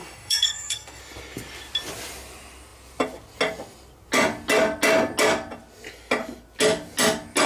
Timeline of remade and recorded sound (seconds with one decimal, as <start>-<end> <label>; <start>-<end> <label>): 0.0-1.0 remade; 1.0-7.5 recorded